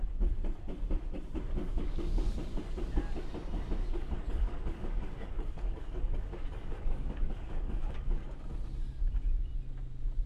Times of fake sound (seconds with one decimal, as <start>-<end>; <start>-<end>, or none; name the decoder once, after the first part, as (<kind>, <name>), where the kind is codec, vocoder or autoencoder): 1.6-2.2 (codec, DAC); 3.8-8.4